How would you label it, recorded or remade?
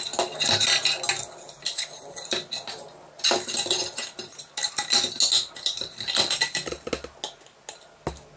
recorded